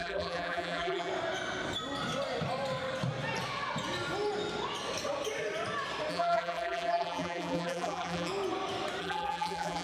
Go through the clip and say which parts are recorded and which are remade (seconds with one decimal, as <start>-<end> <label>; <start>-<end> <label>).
0.0-1.1 remade; 1.1-6.1 recorded; 6.1-8.3 remade; 8.3-9.0 recorded; 9.0-9.8 remade